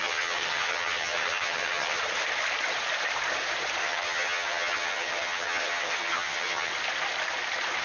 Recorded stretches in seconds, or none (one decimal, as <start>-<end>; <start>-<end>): 2.0-3.8; 6.7-7.8